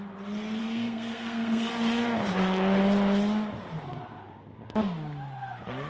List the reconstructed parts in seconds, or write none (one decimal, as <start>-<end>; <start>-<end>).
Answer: 0.6-1.7